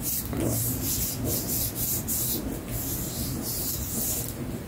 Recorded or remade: recorded